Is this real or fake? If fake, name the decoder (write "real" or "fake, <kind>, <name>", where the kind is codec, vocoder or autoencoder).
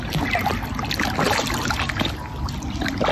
real